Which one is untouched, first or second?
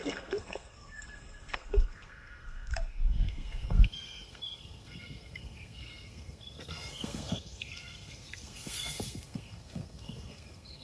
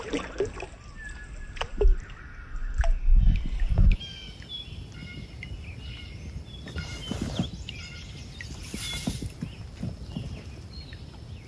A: second